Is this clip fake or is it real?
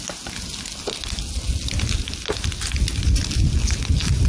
real